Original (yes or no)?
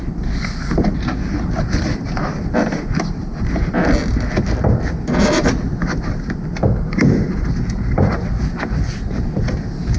yes